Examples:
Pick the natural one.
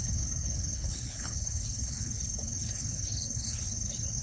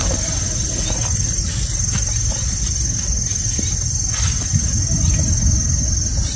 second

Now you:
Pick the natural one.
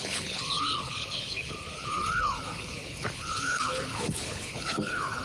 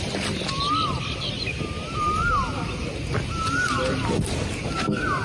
second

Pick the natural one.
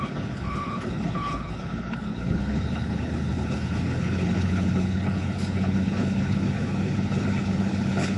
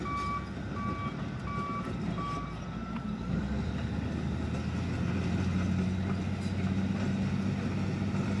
second